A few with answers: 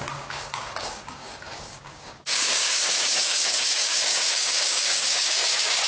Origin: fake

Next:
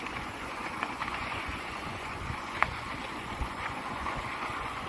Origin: fake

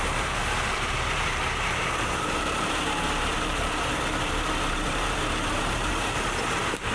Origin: fake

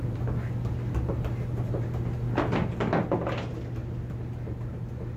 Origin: real